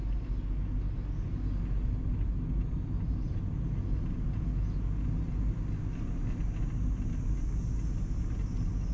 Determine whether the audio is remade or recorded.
recorded